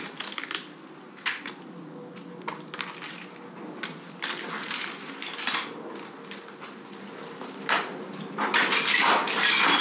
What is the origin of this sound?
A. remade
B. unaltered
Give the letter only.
B